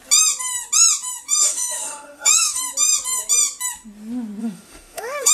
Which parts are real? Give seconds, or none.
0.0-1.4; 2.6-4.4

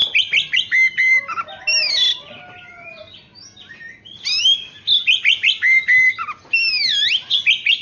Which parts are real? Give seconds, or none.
0.0-7.8

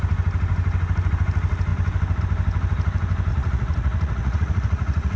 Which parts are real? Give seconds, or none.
0.0-3.3

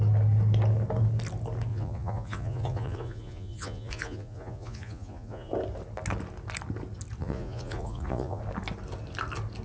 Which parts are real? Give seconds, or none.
0.0-1.7; 5.5-7.2; 8.4-9.6

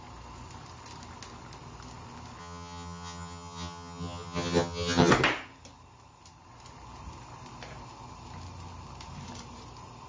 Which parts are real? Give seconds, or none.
0.0-2.4; 5.1-10.1